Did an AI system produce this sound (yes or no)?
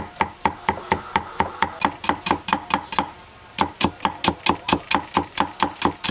no